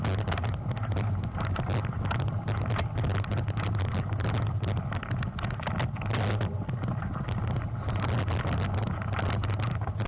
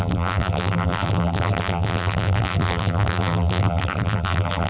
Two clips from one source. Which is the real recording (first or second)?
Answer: first